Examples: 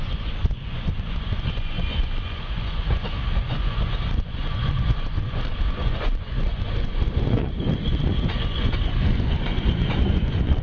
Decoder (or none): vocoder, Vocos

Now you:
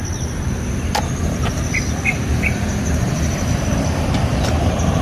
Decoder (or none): none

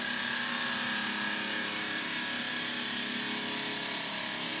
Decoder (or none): none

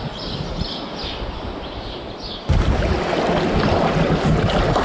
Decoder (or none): none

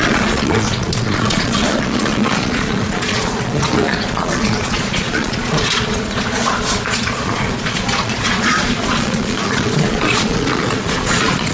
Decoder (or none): vocoder, Vocos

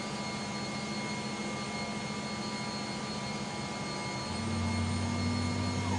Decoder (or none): none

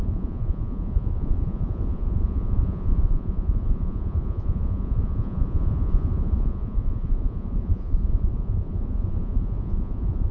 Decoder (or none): vocoder, Vocos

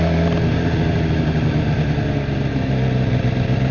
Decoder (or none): none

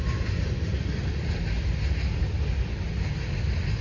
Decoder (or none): none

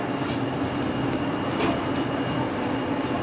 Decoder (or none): none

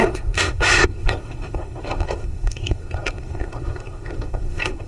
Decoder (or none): codec, SNAC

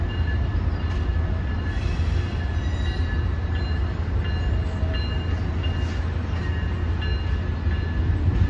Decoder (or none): none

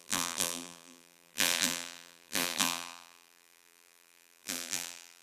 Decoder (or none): vocoder, BigVGAN v2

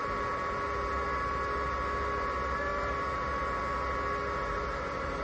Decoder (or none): none